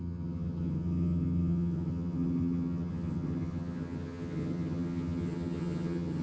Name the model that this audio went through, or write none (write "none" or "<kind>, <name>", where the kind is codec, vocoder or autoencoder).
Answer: vocoder, HiFi-GAN